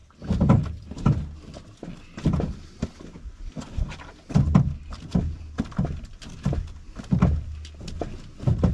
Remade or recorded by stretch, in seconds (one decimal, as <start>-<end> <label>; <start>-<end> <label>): 0.0-8.7 recorded